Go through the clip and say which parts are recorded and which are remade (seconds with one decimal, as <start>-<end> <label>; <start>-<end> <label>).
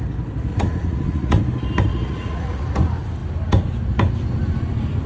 0.0-0.5 recorded; 0.5-1.4 remade; 1.4-1.9 recorded; 1.9-2.6 remade; 2.6-5.1 recorded